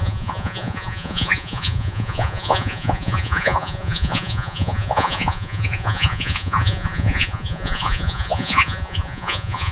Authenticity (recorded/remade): remade